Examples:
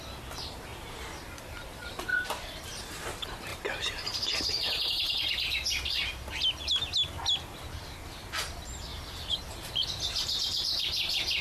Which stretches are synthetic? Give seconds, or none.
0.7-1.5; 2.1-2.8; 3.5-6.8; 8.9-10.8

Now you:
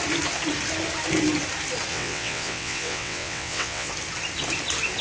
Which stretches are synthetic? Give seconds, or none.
1.9-3.9